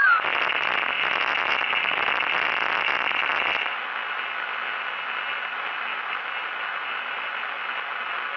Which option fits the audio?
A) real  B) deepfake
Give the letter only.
A